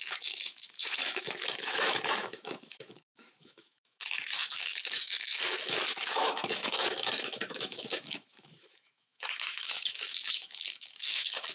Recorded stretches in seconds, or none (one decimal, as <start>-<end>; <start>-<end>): none